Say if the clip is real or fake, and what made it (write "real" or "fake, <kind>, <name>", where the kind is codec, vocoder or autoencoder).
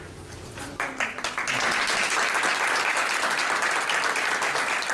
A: real